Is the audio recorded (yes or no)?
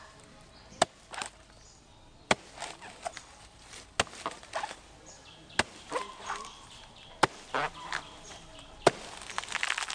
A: yes